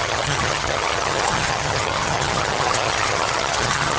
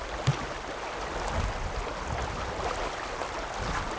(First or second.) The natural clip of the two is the second